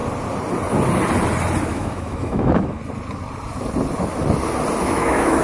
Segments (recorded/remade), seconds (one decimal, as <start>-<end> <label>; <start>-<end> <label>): 0.0-1.6 recorded; 1.6-2.8 remade; 2.8-4.8 recorded; 4.8-5.4 remade